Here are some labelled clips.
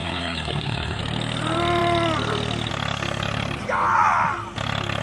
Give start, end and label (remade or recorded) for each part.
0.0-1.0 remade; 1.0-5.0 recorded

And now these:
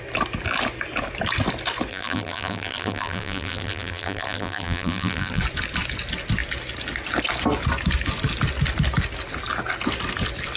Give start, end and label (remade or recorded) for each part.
0.0-1.9 recorded; 1.9-5.4 remade; 5.4-10.6 recorded

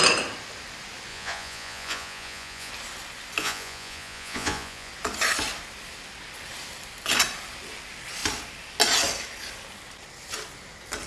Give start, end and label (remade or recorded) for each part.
0.0-1.1 recorded; 1.1-2.7 remade; 2.7-3.4 recorded; 3.4-4.9 remade; 4.9-11.1 recorded

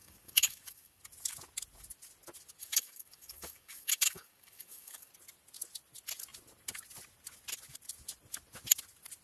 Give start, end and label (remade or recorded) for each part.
0.0-1.0 remade; 1.0-2.6 recorded; 2.6-5.1 remade; 5.1-9.2 recorded

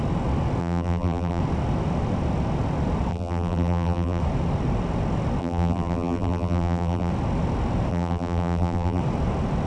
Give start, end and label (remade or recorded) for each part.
0.0-0.6 recorded; 0.6-1.4 remade; 1.4-3.1 recorded; 3.1-4.2 remade; 4.2-5.4 recorded; 5.4-7.1 remade; 7.1-7.9 recorded; 7.9-9.0 remade; 9.0-9.7 recorded

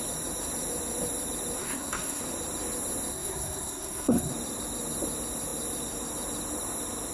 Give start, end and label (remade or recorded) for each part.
0.0-1.6 recorded; 1.6-2.2 remade; 2.2-3.1 recorded; 3.1-4.3 remade; 4.3-7.1 recorded